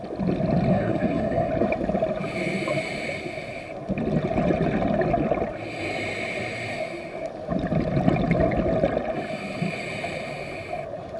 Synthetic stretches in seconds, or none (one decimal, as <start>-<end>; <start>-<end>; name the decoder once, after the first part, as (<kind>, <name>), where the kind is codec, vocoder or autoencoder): 0.7-1.5 (codec, SNAC)